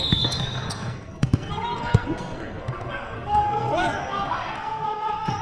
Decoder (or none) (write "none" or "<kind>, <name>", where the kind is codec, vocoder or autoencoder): codec, SNAC